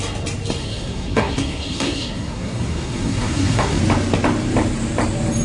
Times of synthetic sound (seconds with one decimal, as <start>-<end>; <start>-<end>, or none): 0.6-3.8